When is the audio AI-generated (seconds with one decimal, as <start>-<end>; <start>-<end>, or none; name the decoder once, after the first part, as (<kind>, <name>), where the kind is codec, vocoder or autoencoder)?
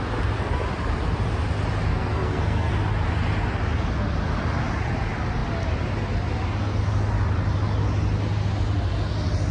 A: 1.9-2.7 (codec, SNAC)